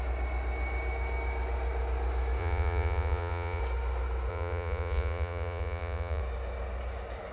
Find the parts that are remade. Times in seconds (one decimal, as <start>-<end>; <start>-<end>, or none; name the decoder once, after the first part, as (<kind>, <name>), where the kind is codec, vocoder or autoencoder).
2.4-3.6 (vocoder, Vocos); 4.3-6.2